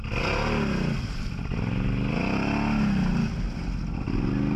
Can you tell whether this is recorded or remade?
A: recorded